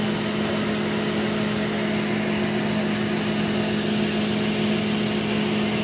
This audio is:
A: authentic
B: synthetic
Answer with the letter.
A